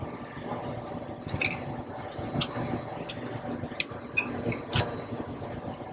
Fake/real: real